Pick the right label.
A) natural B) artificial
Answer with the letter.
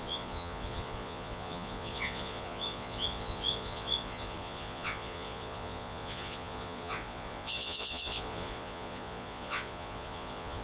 B